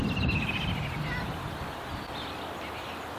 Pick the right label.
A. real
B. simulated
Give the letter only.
B